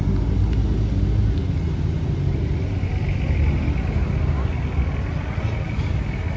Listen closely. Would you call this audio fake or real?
real